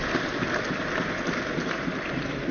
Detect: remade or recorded recorded